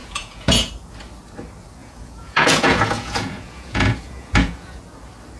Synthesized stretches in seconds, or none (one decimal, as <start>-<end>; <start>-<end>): 0.0-0.7; 1.8-4.8